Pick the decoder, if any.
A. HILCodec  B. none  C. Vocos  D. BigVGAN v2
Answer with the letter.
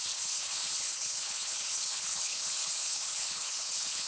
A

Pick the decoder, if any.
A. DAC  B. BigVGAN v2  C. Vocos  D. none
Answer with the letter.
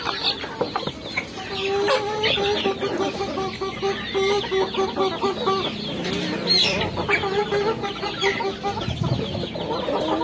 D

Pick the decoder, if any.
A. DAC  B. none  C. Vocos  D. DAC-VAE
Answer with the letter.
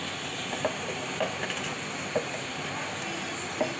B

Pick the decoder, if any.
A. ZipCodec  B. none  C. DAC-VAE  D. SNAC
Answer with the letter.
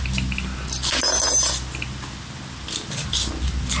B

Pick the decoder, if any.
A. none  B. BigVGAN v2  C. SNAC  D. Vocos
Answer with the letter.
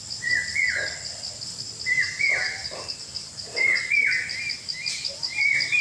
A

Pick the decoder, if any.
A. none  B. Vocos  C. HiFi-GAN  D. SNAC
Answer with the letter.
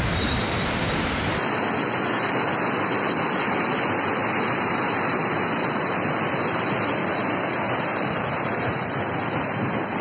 A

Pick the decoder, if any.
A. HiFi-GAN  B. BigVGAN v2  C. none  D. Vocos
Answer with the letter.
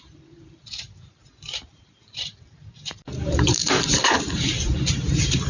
B